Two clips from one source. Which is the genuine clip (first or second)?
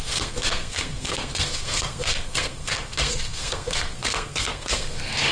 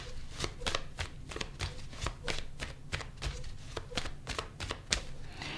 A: second